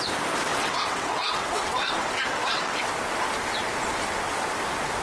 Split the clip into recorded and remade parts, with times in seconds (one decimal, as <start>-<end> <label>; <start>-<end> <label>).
0.0-0.5 recorded; 0.5-2.8 remade; 2.8-5.0 recorded